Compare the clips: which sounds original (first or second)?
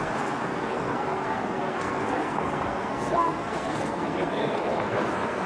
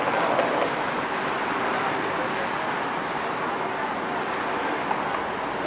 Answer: second